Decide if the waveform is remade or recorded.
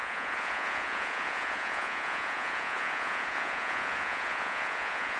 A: remade